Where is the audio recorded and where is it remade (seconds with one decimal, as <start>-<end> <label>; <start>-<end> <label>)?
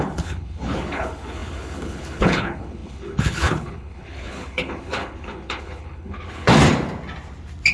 0.0-6.5 remade; 6.5-7.7 recorded